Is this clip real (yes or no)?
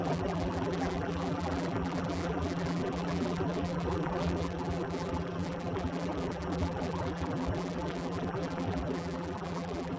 no